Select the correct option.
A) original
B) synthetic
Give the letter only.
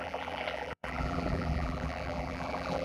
B